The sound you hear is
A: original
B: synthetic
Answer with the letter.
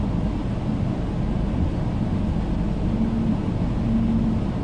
A